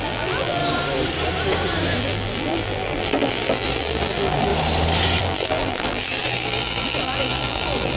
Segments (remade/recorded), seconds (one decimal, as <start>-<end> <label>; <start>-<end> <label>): 0.0-0.6 remade; 0.6-2.0 recorded; 2.0-4.5 remade; 4.5-5.2 recorded; 5.2-8.0 remade